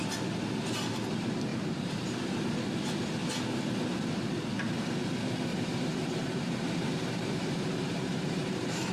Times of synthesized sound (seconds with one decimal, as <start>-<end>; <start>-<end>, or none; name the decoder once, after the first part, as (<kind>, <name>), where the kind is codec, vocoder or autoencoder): 1.5-2.4 (vocoder, BigVGAN v2); 3.2-4.2; 5.5-8.9